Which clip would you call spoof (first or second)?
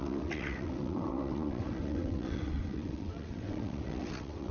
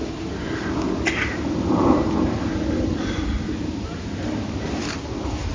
first